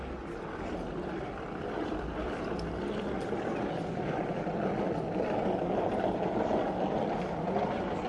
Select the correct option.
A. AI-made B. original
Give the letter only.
B